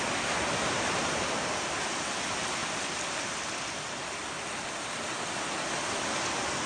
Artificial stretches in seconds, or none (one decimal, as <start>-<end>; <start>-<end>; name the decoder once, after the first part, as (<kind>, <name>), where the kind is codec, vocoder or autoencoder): none